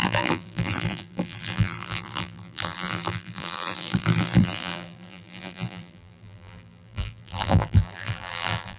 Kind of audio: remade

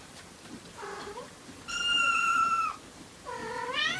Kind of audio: recorded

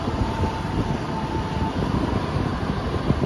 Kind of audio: recorded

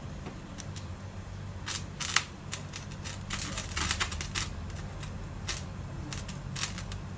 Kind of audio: recorded